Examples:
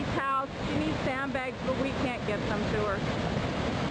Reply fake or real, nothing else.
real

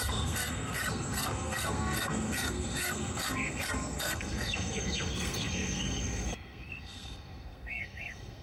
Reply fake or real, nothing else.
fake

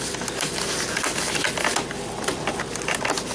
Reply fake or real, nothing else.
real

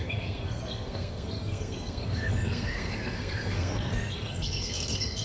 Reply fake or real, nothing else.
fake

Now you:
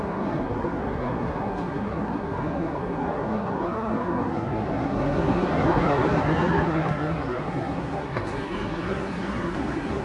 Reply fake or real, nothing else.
fake